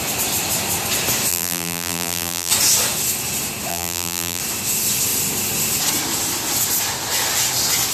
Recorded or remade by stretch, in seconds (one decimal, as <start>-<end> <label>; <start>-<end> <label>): 0.0-1.3 recorded; 1.3-2.5 remade; 2.5-3.7 recorded; 3.7-4.4 remade; 4.4-7.9 recorded